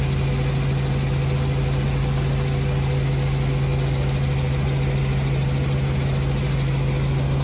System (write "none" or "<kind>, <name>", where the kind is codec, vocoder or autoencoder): none